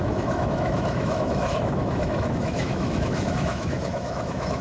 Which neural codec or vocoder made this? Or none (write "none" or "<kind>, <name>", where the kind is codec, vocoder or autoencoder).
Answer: autoencoder, DAC-VAE